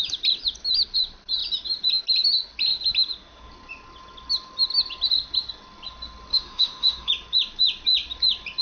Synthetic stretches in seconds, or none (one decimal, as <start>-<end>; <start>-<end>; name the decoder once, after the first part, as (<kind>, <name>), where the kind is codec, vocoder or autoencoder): 6.3-7.1 (autoencoder, DAC-VAE)